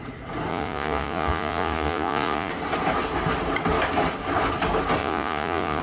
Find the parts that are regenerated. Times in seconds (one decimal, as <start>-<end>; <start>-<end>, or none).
0.5-2.5; 5.0-5.8